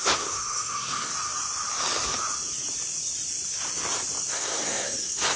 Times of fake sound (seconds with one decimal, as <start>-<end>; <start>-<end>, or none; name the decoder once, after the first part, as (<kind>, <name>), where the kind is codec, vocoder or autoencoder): 0.0-1.1 (codec, SNAC); 4.3-5.4